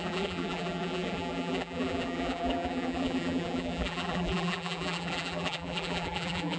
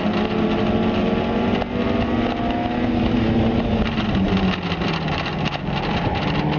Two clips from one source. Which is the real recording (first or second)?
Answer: second